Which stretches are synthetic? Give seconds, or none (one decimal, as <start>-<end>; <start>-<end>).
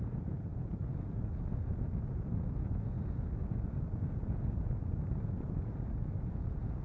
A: 0.0-6.8